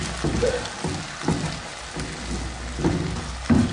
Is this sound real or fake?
real